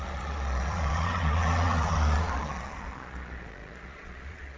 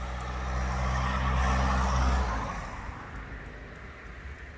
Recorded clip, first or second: second